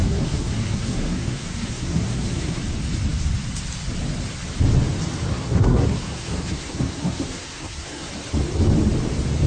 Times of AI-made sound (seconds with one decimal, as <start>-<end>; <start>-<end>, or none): 0.0-2.6; 5.3-8.1